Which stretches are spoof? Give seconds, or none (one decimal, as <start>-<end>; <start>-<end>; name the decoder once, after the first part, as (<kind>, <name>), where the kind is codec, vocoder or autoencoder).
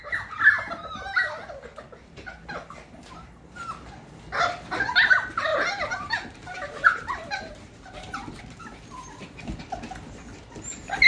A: 5.5-8.4 (vocoder, BigVGAN v2)